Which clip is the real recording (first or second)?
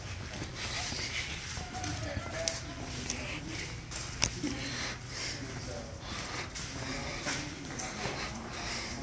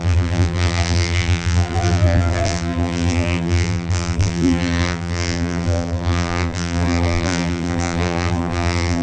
first